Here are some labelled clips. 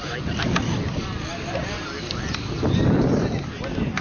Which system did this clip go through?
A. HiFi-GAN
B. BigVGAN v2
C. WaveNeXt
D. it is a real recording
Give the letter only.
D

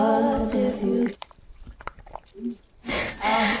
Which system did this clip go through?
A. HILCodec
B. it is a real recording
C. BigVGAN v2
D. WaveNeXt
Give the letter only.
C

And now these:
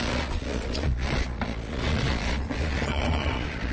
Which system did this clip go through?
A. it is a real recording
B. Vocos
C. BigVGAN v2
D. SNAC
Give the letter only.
B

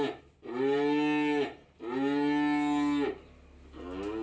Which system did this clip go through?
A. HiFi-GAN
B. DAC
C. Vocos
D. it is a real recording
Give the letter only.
D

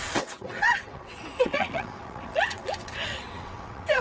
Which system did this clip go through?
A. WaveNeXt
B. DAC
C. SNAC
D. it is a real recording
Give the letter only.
A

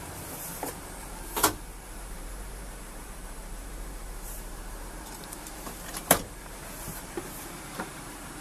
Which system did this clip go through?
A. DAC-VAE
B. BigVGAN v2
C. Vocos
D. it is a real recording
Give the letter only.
B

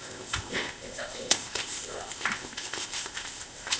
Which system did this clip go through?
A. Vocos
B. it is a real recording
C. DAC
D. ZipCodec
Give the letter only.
D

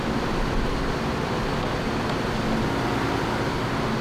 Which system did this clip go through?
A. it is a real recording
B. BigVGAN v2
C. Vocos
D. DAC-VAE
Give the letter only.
A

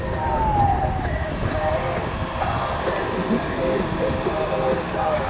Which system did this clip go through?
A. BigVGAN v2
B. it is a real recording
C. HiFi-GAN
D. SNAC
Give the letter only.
B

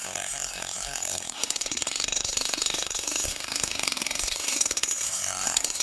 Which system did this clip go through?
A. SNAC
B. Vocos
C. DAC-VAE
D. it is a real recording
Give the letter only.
A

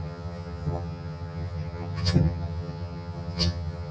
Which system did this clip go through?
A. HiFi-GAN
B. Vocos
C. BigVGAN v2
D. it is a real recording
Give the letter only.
A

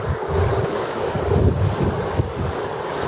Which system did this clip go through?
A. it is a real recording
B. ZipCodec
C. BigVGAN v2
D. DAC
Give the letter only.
D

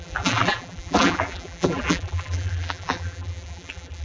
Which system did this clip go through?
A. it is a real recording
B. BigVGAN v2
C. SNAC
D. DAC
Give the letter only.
B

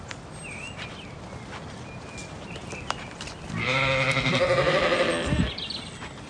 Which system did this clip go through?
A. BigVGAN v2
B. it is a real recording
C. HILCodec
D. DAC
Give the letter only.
B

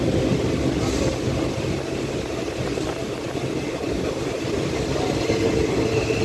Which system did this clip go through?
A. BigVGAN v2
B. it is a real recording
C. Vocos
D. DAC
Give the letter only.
B